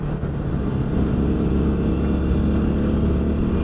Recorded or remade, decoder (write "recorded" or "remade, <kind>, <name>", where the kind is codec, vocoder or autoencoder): recorded